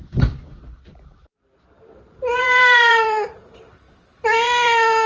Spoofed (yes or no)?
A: yes